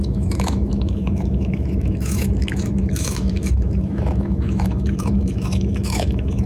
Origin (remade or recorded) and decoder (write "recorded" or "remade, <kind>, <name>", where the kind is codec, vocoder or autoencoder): remade, autoencoder, DAC-VAE